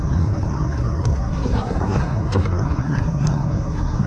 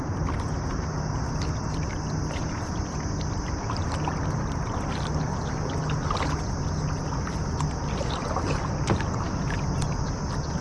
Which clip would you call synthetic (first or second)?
first